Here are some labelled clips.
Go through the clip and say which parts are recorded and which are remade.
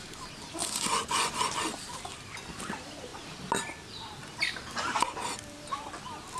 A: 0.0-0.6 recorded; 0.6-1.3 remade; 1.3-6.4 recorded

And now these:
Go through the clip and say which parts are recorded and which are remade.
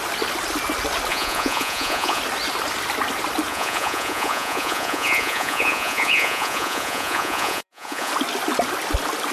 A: 0.0-1.1 recorded; 1.1-2.2 remade; 2.2-3.5 recorded; 3.5-8.1 remade; 8.1-9.3 recorded